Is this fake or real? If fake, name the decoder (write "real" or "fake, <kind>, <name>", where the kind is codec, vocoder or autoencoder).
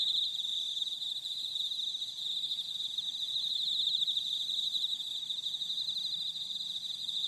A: real